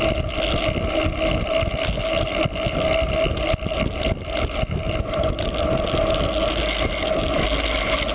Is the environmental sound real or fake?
real